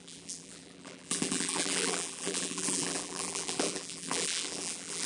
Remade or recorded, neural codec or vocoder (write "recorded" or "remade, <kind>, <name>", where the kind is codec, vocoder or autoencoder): remade, vocoder, BigVGAN v2